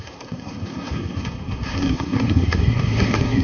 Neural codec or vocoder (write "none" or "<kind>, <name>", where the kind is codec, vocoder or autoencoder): codec, SNAC